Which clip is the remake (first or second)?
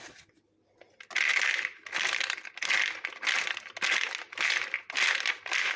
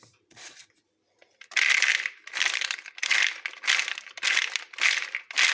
second